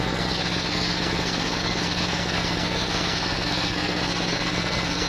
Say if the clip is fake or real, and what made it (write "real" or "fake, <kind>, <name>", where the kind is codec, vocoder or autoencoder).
fake, codec, SNAC